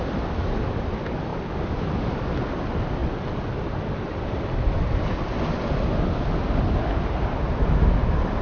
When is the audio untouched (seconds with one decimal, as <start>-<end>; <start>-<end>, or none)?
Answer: 0.0-8.4